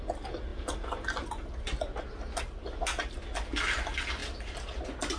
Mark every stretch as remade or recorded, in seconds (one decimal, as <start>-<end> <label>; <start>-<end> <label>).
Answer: 0.0-5.2 recorded

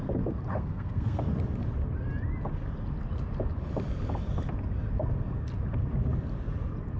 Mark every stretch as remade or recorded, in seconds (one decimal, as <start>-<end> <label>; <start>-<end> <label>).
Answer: 0.0-0.5 recorded; 0.5-1.2 remade; 1.2-7.0 recorded

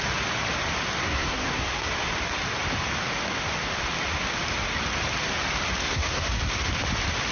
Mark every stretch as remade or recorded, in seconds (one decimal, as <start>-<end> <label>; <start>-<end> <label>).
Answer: 0.0-1.0 recorded; 1.0-1.9 remade; 1.9-5.8 recorded; 5.8-6.4 remade; 6.4-7.3 recorded